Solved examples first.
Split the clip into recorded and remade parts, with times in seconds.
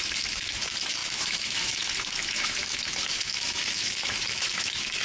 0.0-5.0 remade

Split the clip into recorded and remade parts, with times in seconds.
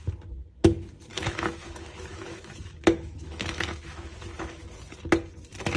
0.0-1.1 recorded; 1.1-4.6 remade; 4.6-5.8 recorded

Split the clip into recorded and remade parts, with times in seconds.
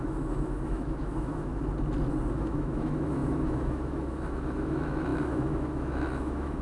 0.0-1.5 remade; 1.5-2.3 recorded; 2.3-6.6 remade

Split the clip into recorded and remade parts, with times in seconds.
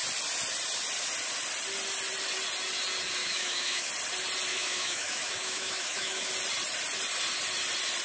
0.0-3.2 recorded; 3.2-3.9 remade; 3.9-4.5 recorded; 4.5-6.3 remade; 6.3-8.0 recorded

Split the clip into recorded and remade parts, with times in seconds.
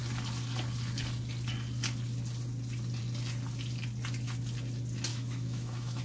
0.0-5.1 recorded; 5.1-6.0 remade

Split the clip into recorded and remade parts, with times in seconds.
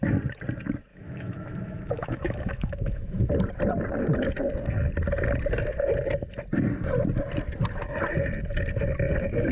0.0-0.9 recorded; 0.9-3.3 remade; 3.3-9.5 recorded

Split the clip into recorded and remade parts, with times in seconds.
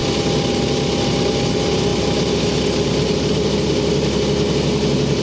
0.0-5.2 recorded